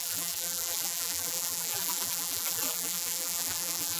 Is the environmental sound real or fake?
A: fake